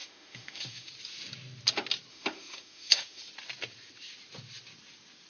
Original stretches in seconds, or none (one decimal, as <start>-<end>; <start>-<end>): 0.9-2.1; 3.2-5.3